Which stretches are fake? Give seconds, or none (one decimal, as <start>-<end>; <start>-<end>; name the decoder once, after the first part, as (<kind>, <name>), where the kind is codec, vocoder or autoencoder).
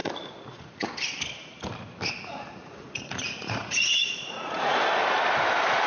0.0-0.9 (vocoder, Vocos); 2.6-4.8